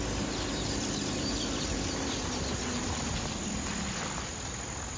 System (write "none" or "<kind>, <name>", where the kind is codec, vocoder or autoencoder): none